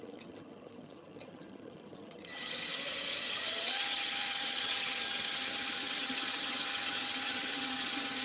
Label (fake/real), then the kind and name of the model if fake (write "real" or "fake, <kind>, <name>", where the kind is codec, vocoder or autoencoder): fake, vocoder, HiFi-GAN